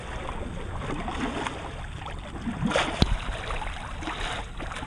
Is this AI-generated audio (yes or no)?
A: no